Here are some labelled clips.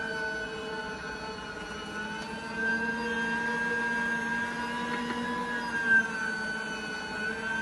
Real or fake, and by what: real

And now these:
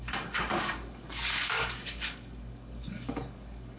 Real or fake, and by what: fake, codec, DAC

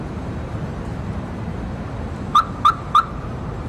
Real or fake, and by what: fake, vocoder, BigVGAN v2